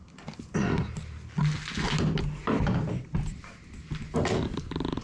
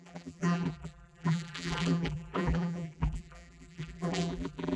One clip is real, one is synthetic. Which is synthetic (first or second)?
second